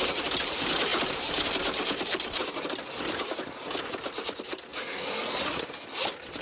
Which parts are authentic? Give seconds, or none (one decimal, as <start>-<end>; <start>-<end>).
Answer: 0.0-6.4